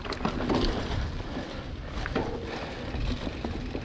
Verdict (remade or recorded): recorded